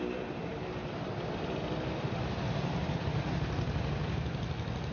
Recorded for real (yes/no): yes